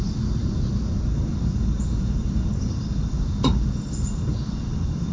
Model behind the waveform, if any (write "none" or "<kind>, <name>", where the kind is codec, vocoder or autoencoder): none